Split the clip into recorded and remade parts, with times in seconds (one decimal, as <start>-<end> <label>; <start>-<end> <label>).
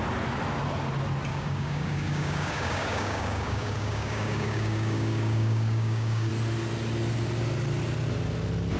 0.0-1.3 recorded; 1.3-6.3 remade; 6.3-8.8 recorded